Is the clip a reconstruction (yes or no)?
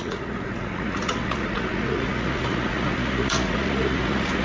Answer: yes